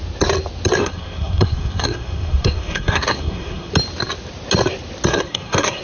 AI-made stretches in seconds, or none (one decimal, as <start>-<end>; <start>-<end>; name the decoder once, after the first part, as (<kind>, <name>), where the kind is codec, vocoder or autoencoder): 0.8-3.7 (codec, SNAC); 5.1-5.8